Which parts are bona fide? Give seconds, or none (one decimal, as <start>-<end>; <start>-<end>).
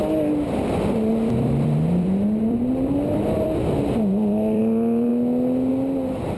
0.0-0.6; 5.1-5.7